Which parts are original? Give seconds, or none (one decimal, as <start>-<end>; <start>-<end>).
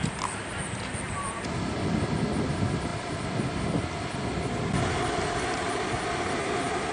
0.0-6.9